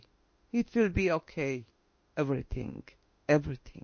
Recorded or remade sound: remade